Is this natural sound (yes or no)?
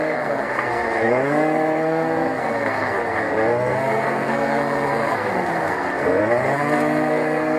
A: no